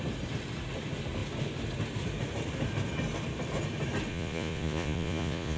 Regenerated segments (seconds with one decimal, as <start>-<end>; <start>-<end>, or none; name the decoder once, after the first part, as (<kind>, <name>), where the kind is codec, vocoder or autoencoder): 4.1-5.6 (vocoder, Vocos)